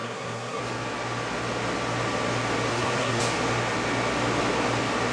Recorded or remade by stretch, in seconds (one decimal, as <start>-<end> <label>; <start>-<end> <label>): 0.0-0.6 remade; 0.6-2.7 recorded; 2.7-3.2 remade; 3.2-5.1 recorded